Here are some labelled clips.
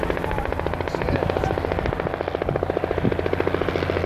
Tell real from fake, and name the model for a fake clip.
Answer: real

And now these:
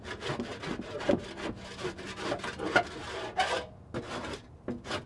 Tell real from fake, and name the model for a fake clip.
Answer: real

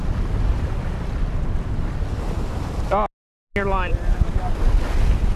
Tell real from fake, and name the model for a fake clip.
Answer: real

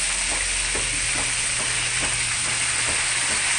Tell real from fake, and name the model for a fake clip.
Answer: real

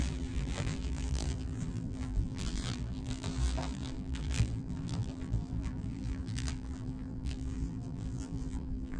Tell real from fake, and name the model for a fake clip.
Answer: fake, vocoder, BigVGAN v2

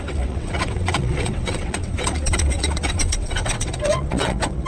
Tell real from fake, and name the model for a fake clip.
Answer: fake, vocoder, WaveNeXt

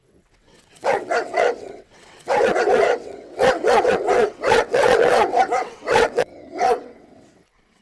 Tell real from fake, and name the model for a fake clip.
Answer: fake, vocoder, WaveNeXt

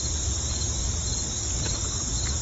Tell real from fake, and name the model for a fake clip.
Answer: real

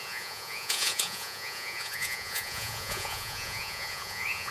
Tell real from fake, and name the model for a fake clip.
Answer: fake, vocoder, Vocos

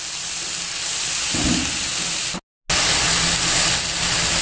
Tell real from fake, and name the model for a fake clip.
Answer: real